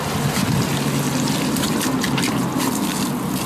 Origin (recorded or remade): recorded